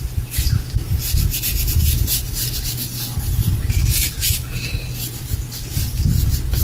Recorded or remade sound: recorded